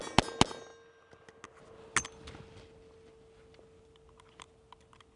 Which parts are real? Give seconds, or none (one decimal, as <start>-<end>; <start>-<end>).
0.0-5.2